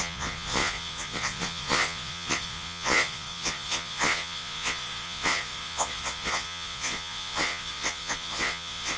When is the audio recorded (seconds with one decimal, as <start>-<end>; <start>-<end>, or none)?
none